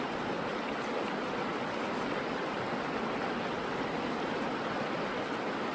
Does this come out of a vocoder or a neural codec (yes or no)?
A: no